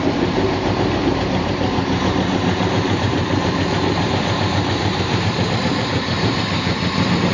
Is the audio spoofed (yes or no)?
yes